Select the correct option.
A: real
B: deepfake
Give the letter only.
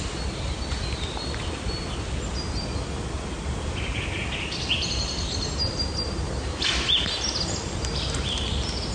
A